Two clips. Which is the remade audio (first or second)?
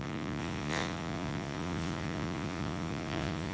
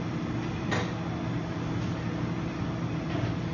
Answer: first